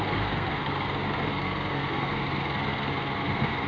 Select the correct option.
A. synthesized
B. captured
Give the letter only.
A